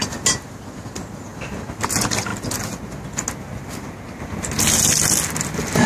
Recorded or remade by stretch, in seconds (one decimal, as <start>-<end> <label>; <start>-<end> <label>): 0.0-5.9 recorded